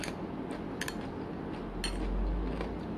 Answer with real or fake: real